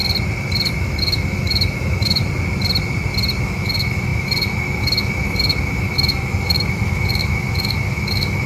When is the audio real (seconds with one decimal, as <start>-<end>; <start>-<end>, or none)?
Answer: 0.0-0.8; 2.2-3.4